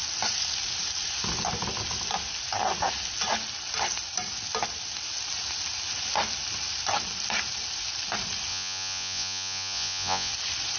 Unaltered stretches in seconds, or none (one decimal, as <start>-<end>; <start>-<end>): 0.0-8.5; 10.3-10.8